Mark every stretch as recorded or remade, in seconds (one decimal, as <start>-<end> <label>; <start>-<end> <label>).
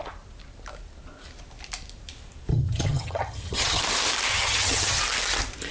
0.0-2.5 recorded; 2.5-3.8 remade; 3.8-4.3 recorded; 4.3-5.0 remade; 5.0-5.7 recorded